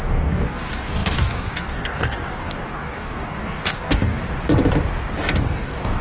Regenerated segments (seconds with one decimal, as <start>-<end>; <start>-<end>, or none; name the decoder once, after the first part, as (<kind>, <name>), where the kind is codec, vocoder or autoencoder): 0.0-4.2 (codec, DAC); 5.4-6.0